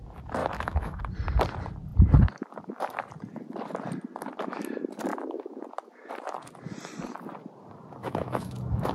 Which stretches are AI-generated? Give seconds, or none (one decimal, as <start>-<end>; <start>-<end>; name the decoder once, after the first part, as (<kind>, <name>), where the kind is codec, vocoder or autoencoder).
0.4-1.0 (autoencoder, DAC-VAE); 5.1-5.6; 8.0-8.9